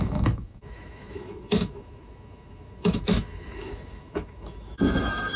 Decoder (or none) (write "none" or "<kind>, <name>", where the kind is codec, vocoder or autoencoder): autoencoder, DAC-VAE